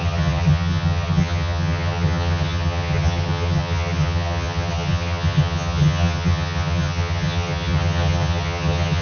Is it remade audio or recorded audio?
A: remade